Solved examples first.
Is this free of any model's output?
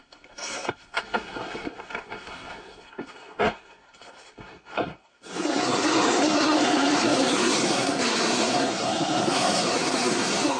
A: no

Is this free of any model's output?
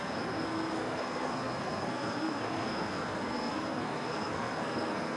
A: no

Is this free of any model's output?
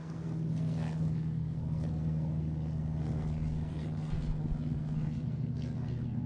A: no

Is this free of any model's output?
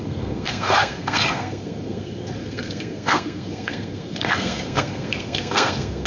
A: no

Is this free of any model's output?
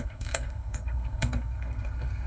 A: no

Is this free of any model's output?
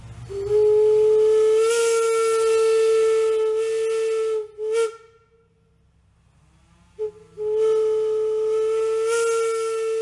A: yes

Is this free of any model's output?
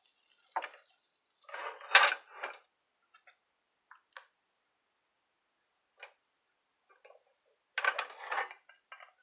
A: yes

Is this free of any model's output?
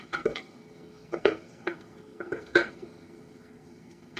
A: no